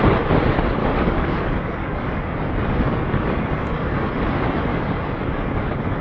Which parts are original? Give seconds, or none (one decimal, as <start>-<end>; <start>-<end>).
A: 0.0-0.8; 4.1-4.7